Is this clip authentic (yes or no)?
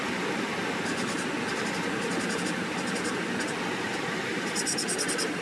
yes